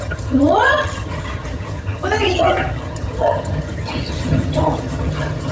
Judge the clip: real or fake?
fake